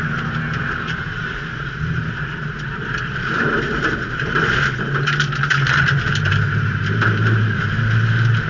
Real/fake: fake